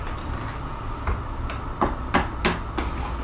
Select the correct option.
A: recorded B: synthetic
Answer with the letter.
A